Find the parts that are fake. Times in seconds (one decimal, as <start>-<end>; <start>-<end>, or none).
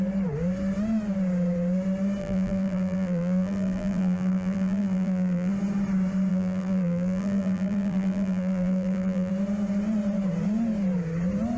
2.2-5.5; 6.3-9.3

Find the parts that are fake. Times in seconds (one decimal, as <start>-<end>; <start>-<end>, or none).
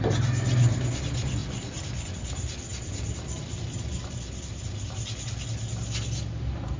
none